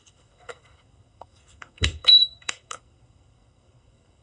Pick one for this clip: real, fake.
fake